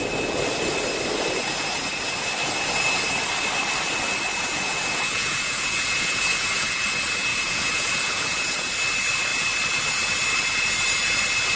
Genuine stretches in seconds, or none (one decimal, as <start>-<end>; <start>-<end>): 0.0-4.5; 6.8-7.3; 8.7-11.6